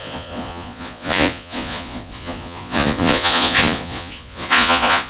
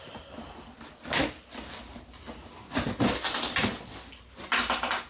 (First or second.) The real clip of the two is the second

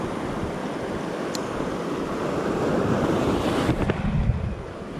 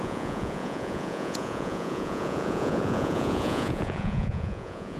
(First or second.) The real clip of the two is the first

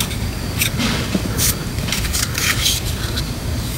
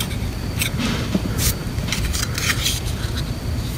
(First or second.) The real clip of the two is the second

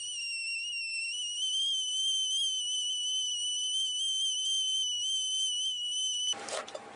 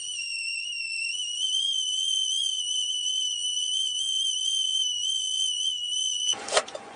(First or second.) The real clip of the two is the first